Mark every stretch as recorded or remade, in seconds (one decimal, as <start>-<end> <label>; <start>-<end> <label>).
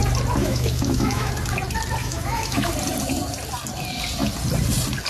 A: 0.0-0.4 recorded; 0.4-1.3 remade; 1.3-2.0 recorded; 2.0-2.7 remade; 2.7-5.1 recorded